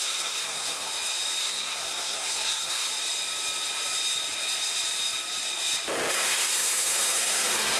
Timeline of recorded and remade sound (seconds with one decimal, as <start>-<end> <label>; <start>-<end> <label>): 0.0-0.9 remade; 0.9-1.4 recorded; 1.4-2.9 remade; 2.9-6.1 recorded; 6.1-7.8 remade